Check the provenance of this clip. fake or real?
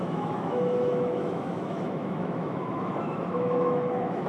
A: fake